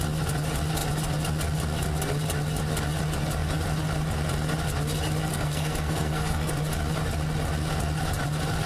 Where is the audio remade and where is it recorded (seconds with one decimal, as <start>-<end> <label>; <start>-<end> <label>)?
0.0-5.3 recorded; 5.3-6.5 remade; 6.5-8.7 recorded